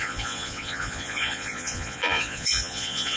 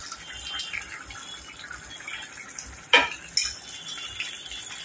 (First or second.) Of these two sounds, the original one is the second